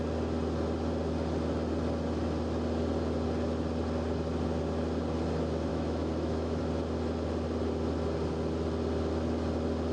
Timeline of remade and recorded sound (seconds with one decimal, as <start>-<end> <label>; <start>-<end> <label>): 0.0-5.7 recorded; 5.7-6.6 remade; 6.6-9.9 recorded